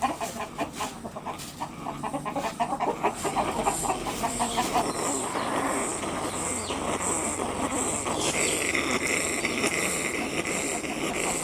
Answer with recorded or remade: recorded